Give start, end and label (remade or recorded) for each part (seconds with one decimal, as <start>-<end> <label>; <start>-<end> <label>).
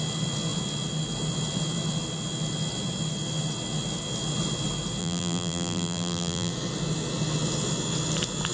0.0-5.0 recorded; 5.0-6.5 remade; 6.5-8.5 recorded